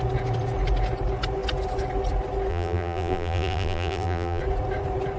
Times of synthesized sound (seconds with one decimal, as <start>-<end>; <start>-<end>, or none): 2.5-4.4